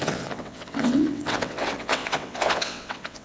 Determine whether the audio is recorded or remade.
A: remade